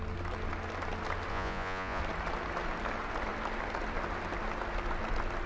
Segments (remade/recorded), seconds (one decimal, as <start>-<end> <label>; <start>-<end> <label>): 0.0-1.3 recorded; 1.3-2.0 remade; 2.0-5.5 recorded